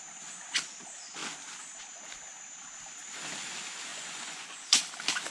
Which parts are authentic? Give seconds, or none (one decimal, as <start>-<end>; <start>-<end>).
0.0-3.9; 4.8-5.3